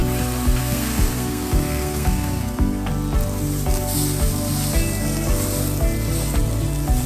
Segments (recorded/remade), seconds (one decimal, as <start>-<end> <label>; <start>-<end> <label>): 0.0-0.6 recorded; 0.6-2.9 remade; 2.9-7.1 recorded